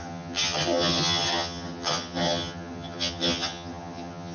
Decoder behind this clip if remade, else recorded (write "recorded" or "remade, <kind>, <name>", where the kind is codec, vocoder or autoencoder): remade, vocoder, HiFi-GAN